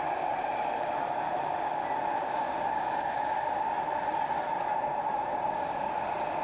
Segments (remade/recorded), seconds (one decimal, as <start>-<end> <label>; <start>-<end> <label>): 0.0-2.2 recorded; 2.2-3.2 remade; 3.2-6.4 recorded